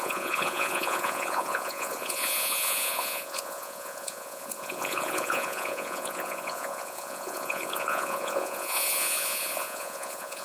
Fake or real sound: fake